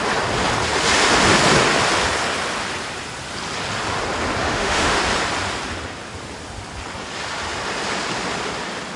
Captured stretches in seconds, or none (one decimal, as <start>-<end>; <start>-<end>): 0.0-4.4; 5.0-9.0